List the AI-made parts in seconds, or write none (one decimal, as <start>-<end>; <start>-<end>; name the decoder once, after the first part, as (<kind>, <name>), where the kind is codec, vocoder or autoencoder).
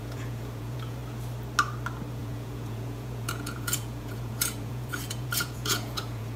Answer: 0.0-1.0 (vocoder, Vocos); 2.1-6.4